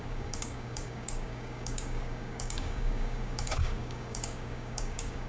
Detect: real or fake fake